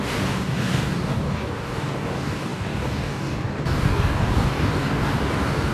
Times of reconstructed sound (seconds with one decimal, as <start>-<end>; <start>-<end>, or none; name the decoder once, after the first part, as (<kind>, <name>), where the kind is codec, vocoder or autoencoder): 0.0-5.7 (codec, DAC)